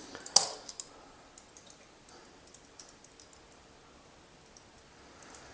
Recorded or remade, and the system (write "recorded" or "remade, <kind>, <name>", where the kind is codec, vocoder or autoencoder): recorded